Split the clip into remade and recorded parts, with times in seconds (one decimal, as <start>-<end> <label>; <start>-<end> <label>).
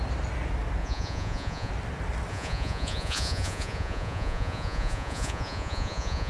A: 0.0-0.8 recorded; 0.8-1.7 remade; 1.7-2.3 recorded; 2.3-6.3 remade